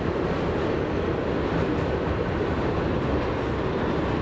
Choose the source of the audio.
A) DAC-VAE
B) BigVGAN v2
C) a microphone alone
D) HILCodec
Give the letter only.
C